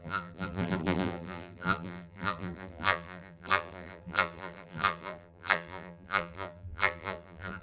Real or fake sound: fake